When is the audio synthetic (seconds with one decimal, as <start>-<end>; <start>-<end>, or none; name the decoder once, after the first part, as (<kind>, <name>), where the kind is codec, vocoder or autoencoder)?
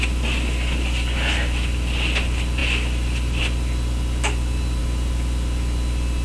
none